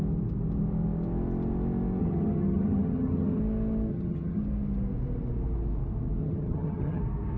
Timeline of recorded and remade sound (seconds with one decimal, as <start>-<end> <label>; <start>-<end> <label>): 0.0-2.0 recorded; 2.0-3.4 remade; 3.4-3.9 recorded; 3.9-4.4 remade; 4.4-6.2 recorded; 6.2-7.0 remade; 7.0-7.4 recorded